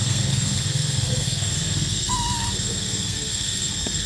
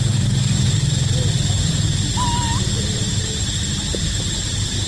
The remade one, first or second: first